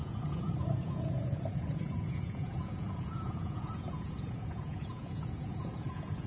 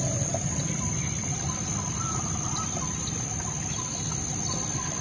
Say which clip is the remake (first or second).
first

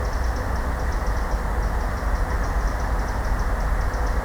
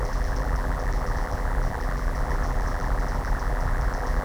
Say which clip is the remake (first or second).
second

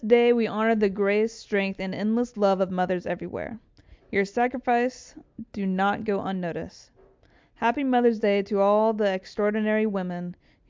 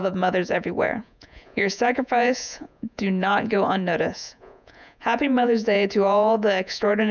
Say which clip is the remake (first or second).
second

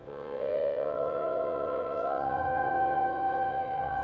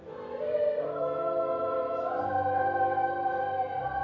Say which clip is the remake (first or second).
first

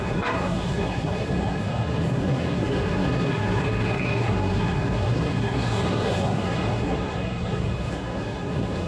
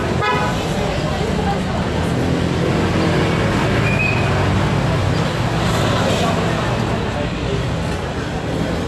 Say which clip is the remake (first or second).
first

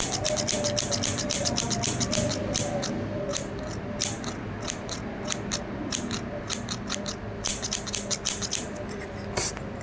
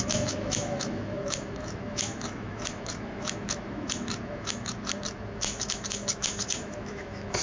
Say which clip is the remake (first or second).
second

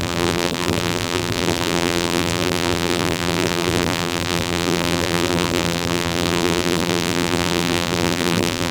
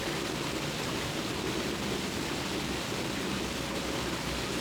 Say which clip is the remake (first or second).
first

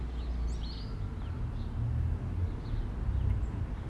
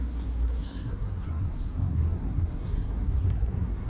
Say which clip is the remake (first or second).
second